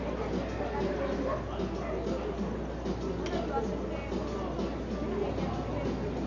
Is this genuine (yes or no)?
yes